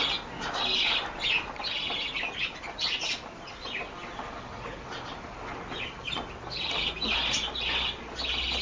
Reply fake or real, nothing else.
real